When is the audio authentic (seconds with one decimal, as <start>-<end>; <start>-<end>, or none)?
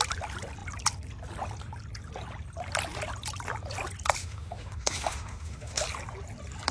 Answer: 0.0-4.2; 5.8-6.7